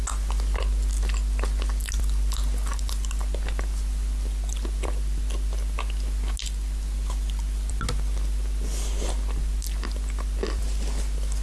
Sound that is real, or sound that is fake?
real